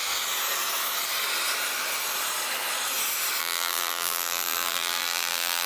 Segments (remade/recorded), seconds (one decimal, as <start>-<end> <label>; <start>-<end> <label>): 0.0-3.4 recorded; 3.4-5.7 remade